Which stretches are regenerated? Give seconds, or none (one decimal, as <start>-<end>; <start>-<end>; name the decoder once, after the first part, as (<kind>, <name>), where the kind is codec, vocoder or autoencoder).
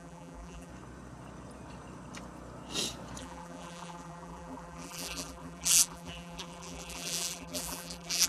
0.0-0.7 (vocoder, BigVGAN v2); 3.2-8.3